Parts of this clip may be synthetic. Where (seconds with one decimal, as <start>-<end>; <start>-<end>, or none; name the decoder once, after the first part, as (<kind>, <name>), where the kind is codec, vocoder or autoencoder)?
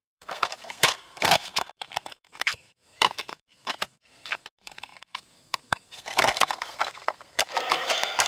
0.0-8.3 (codec, SNAC)